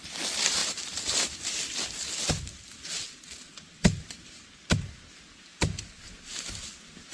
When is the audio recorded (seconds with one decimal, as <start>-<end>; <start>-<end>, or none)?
0.0-7.1